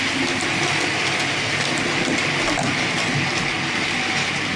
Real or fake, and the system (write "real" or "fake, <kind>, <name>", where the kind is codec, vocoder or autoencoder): real